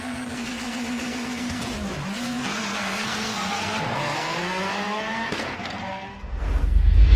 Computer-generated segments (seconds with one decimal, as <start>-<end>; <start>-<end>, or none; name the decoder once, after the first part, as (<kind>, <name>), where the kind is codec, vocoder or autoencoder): 0.0-1.6 (codec, SNAC); 2.2-7.2